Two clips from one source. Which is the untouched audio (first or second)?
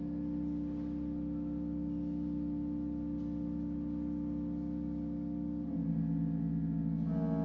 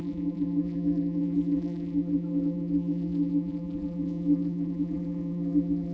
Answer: first